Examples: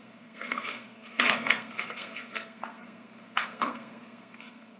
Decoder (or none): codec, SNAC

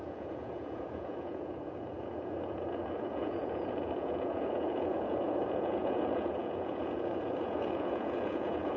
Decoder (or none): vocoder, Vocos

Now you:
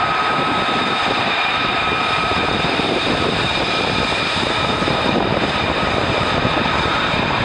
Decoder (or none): vocoder, BigVGAN v2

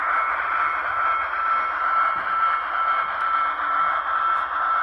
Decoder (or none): none